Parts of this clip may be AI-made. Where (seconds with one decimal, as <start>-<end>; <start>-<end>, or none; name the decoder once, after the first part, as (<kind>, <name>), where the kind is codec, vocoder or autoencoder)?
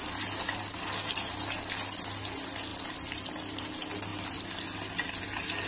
none